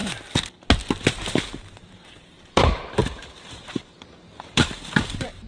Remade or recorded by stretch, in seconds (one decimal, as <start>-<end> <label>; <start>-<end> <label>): 0.0-2.5 recorded; 2.5-5.5 remade